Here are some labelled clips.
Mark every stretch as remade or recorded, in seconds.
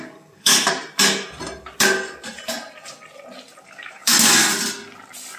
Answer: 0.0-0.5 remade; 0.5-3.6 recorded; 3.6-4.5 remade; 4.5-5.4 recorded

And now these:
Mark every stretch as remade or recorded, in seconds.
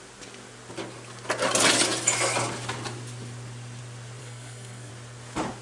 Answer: 0.0-4.2 recorded; 4.2-4.9 remade; 4.9-5.6 recorded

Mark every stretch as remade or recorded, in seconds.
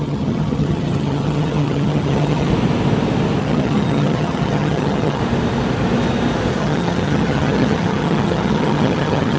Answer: 0.0-2.5 remade; 2.5-3.4 recorded; 3.4-5.2 remade; 5.2-6.6 recorded; 6.6-9.4 remade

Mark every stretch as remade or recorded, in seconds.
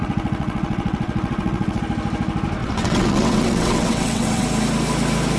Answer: 0.0-1.8 remade; 1.8-2.6 recorded; 2.6-4.4 remade; 4.4-5.4 recorded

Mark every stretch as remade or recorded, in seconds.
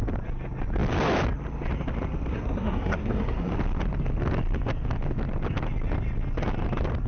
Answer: 0.0-2.3 recorded; 2.3-3.5 remade; 3.5-7.1 recorded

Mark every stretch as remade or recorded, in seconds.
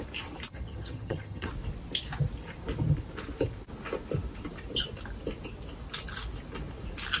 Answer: 0.0-0.5 recorded; 0.5-1.5 remade; 1.5-7.2 recorded